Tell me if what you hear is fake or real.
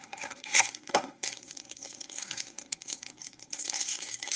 fake